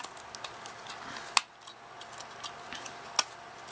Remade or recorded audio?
recorded